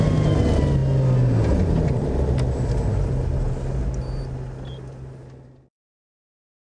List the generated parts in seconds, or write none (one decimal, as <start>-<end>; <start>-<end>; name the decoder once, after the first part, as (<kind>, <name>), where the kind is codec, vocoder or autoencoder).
none